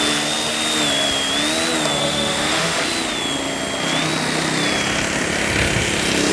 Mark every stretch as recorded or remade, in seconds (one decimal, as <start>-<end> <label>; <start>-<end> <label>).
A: 0.0-2.0 recorded; 2.0-2.8 remade; 2.8-6.3 recorded